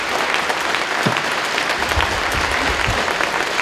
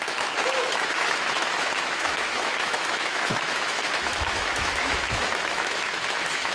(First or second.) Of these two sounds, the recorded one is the first